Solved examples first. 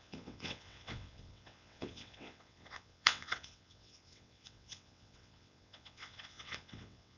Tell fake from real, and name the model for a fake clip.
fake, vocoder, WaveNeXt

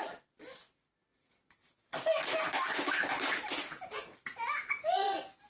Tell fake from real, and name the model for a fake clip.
real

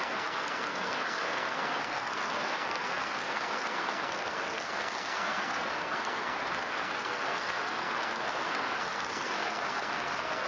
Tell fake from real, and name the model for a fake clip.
fake, codec, SNAC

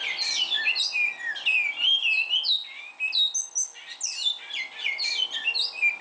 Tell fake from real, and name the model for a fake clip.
real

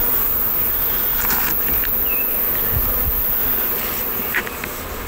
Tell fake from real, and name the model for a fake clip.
real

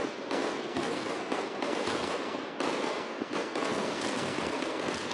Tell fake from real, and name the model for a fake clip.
fake, codec, SNAC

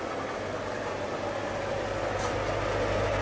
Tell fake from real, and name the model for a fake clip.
real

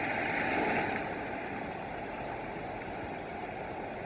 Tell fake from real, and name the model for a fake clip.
real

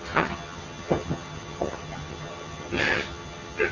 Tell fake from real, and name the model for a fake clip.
fake, vocoder, HiFi-GAN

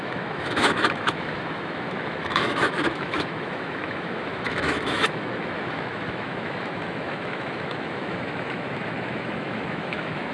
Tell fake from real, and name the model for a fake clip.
fake, autoencoder, DAC-VAE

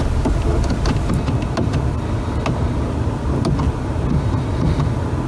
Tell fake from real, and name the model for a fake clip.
real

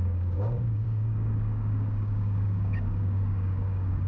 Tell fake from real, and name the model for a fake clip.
fake, codec, DAC